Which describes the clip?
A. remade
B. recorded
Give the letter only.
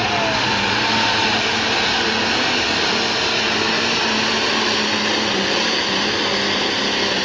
B